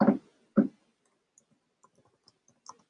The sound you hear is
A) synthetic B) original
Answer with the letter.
B